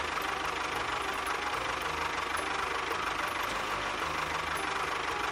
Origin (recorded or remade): recorded